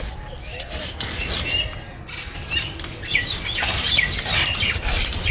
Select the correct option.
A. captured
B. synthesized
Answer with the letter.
A